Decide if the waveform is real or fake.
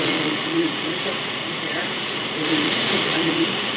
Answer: fake